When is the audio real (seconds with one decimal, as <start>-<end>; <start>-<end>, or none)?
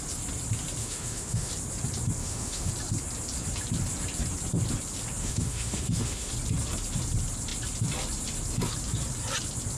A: 0.0-0.8; 1.5-2.2; 2.7-5.2; 6.3-9.8